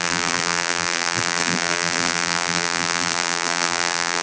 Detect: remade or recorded remade